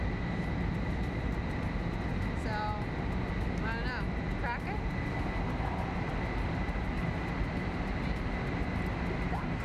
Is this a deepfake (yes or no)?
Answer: no